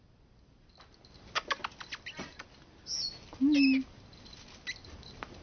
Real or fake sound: real